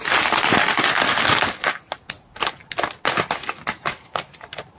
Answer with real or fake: real